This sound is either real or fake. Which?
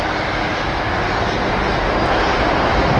real